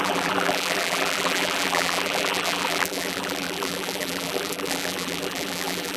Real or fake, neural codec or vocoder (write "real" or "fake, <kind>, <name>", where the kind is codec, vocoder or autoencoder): fake, vocoder, BigVGAN v2